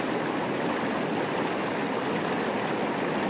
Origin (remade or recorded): recorded